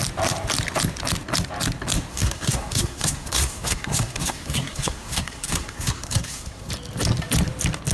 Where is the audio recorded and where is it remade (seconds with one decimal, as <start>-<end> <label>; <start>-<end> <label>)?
0.0-2.1 recorded; 2.1-6.7 remade; 6.7-7.9 recorded